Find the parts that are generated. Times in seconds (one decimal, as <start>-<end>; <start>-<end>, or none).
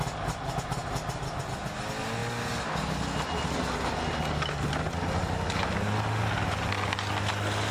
none